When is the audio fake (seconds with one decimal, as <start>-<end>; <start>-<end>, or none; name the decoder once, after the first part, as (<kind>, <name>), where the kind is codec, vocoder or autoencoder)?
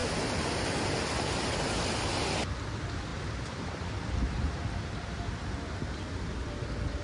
3.1-4.5 (vocoder, BigVGAN v2)